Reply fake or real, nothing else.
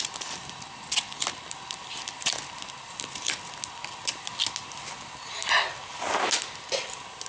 real